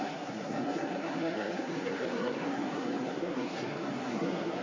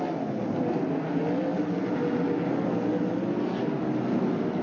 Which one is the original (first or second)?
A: second